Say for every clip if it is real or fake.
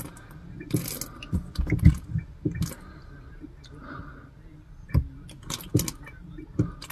real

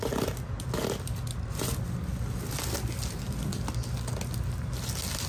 real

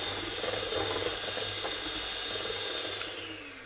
real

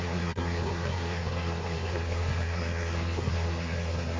fake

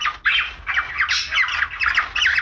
real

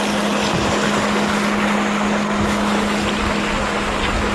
real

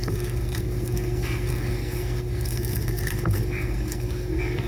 fake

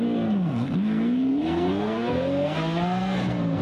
fake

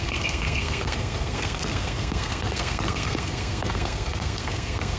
fake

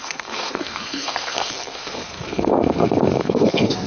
fake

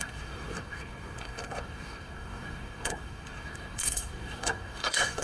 fake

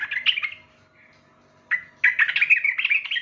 real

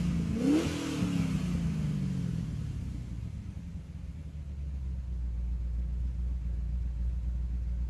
real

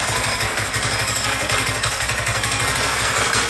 fake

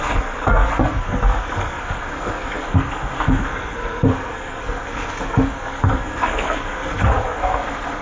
fake